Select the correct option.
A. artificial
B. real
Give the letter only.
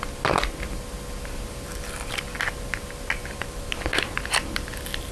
B